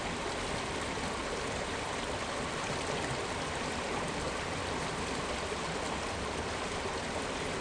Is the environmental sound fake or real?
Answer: real